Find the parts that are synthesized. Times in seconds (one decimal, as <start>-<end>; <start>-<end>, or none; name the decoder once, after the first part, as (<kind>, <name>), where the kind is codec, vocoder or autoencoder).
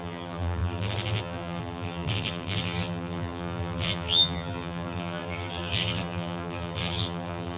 0.0-7.6 (vocoder, BigVGAN v2)